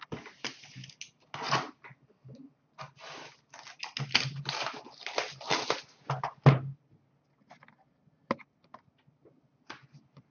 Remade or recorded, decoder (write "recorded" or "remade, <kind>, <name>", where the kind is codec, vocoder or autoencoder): recorded